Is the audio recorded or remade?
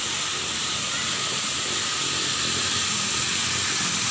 recorded